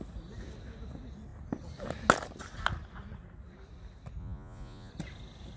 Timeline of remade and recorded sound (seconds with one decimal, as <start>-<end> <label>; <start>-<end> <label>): 0.0-4.2 recorded; 4.2-4.9 remade; 4.9-5.6 recorded